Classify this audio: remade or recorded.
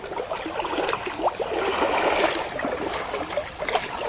recorded